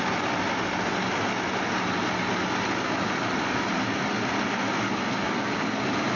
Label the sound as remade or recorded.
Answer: recorded